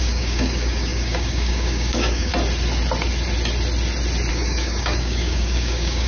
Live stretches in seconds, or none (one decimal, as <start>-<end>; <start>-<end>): 2.3-4.3